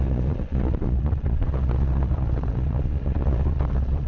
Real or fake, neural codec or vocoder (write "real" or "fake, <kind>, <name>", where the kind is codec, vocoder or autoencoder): fake, vocoder, Vocos